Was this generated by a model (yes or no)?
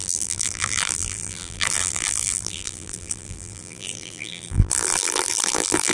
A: yes